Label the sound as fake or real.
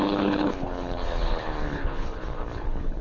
fake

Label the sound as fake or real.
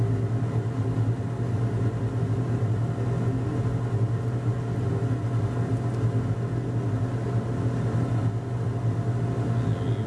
real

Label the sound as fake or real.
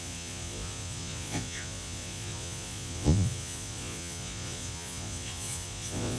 fake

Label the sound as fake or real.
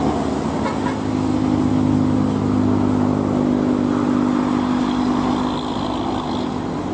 real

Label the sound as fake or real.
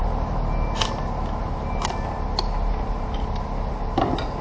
real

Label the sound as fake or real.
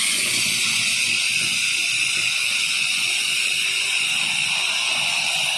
fake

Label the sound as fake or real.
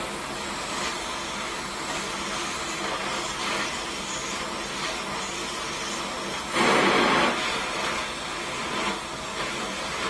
real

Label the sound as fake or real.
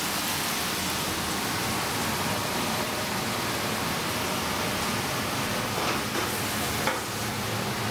real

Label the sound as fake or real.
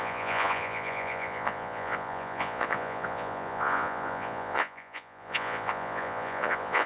fake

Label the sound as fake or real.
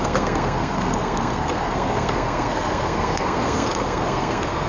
fake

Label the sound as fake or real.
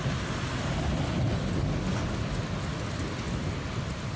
real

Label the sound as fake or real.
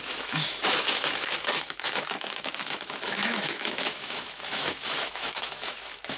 fake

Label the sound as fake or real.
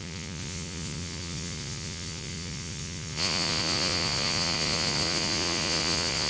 fake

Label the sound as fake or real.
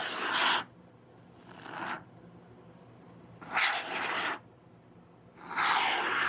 real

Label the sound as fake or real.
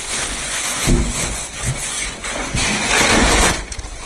fake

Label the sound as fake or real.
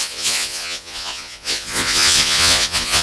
fake